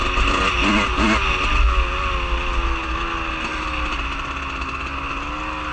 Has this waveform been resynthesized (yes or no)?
no